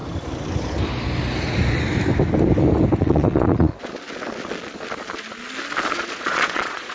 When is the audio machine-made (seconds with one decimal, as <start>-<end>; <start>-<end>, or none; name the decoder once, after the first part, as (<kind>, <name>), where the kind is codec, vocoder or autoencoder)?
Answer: 3.0-3.7 (vocoder, Vocos); 5.9-6.9